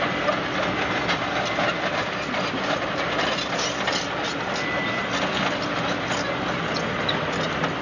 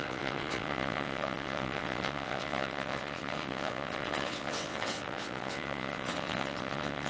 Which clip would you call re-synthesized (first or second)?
second